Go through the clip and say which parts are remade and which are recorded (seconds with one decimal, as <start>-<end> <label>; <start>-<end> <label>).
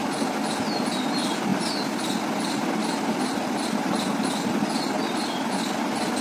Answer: 0.0-6.2 recorded